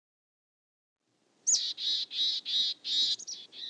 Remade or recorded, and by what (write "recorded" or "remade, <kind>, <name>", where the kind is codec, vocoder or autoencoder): recorded